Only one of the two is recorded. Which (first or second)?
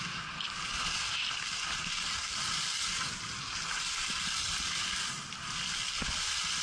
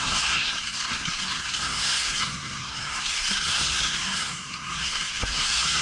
first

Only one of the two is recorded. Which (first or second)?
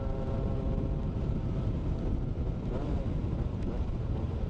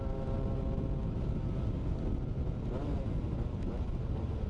second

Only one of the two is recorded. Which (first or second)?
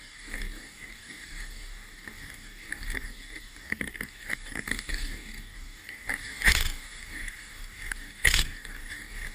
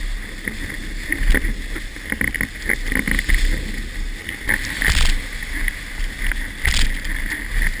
second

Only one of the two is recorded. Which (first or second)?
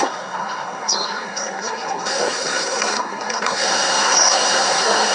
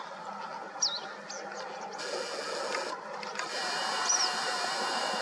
second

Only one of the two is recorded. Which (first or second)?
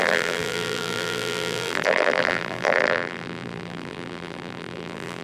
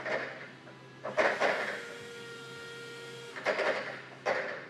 second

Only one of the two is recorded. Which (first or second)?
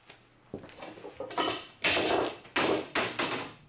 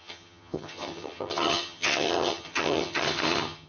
first